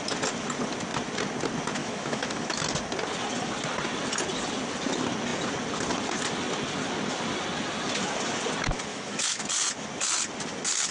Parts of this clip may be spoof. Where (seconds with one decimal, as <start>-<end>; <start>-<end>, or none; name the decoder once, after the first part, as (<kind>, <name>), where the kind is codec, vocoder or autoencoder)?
1.8-2.6 (autoencoder, DAC-VAE); 8.9-9.4